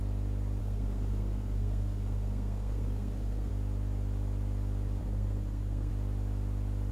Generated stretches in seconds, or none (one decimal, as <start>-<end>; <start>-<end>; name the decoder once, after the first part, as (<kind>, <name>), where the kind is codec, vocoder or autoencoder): 0.6-3.5 (codec, SNAC); 5.0-5.9